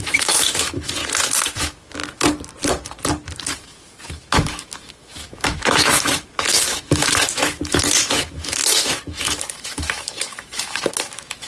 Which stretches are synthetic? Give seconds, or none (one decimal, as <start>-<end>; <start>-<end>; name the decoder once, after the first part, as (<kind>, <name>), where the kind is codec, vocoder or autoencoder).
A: 0.0-1.0 (autoencoder, DAC-VAE); 1.6-2.0; 3.5-11.5